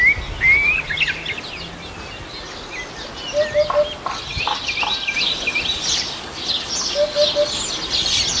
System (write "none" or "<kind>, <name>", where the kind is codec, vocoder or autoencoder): none